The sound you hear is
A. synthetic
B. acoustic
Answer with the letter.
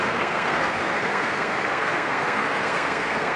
A